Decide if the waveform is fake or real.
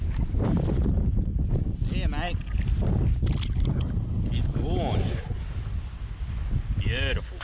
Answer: real